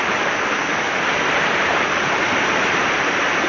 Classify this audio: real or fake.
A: real